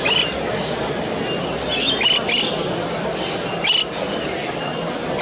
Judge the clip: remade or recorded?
recorded